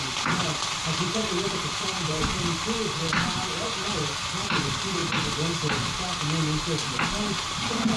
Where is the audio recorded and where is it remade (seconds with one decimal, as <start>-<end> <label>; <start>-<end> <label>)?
0.0-0.4 recorded; 0.4-2.4 remade; 2.4-3.0 recorded; 3.0-4.1 remade; 4.1-8.0 recorded